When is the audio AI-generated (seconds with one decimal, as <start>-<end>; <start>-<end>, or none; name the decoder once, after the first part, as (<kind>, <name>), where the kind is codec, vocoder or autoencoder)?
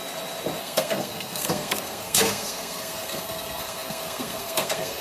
0.6-5.0 (codec, SNAC)